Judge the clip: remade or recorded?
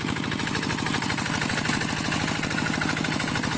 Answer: recorded